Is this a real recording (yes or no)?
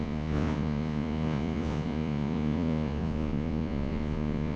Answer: no